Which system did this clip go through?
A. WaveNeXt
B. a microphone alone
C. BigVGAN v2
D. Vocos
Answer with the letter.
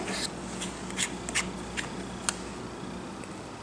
B